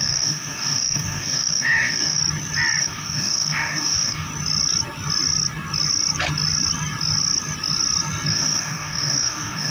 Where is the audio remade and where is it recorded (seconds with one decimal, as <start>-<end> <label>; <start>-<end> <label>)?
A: 0.0-2.2 remade; 2.2-2.8 recorded; 2.8-4.3 remade; 4.3-8.3 recorded; 8.3-9.7 remade